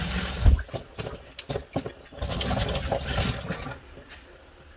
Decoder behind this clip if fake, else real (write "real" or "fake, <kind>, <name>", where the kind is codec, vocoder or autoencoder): real